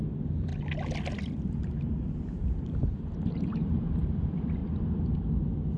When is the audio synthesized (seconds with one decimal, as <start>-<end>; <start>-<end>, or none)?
0.0-0.5; 1.2-4.6